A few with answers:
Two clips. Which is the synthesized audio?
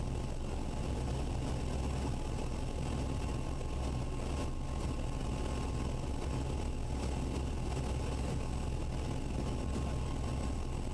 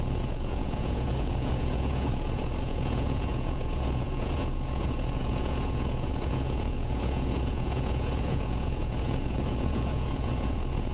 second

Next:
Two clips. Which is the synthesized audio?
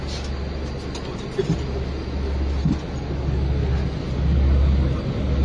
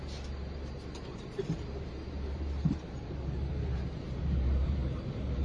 second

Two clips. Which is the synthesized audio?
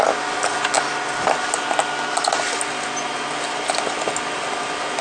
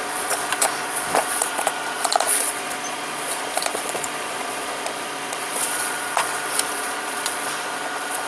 second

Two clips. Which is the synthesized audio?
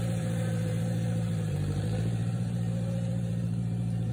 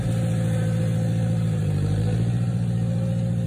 first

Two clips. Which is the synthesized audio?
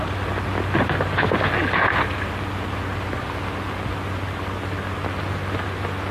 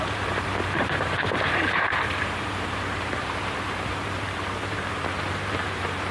second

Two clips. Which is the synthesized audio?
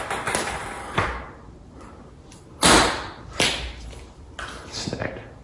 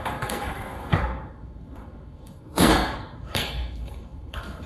second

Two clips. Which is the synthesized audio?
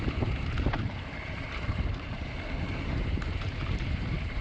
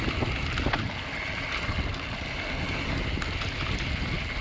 first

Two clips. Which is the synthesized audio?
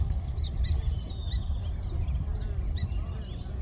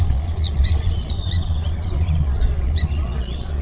second